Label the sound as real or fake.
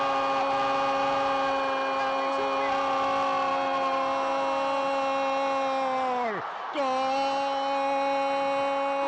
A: real